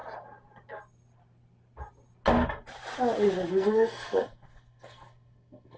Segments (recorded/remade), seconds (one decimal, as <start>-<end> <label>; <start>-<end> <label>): 0.0-3.5 recorded; 3.5-5.8 remade